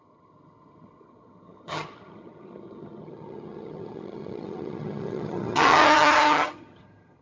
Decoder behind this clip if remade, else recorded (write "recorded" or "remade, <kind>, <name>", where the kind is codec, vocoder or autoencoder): remade, vocoder, HiFi-GAN